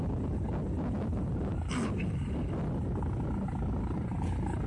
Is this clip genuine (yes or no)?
yes